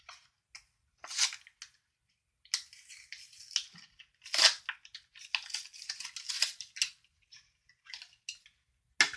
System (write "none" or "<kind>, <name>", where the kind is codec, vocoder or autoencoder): none